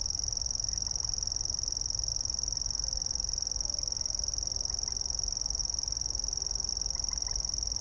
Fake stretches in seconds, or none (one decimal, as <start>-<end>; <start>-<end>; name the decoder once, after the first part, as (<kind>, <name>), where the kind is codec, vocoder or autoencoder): none